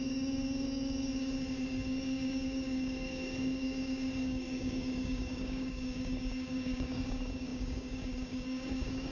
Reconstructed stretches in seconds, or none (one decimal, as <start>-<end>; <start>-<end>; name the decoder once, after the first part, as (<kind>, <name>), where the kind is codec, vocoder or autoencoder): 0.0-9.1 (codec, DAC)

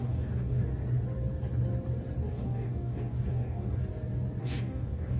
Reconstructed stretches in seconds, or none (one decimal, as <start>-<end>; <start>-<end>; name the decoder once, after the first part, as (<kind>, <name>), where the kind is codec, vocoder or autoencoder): 0.0-0.7 (codec, DAC); 2.3-3.9; 4.4-5.2

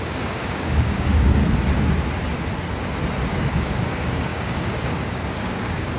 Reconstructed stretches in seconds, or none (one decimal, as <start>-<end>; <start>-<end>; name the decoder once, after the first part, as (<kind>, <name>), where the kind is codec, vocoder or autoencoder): 0.0-1.4 (codec, DAC); 3.3-6.0